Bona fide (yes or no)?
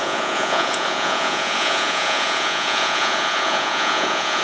no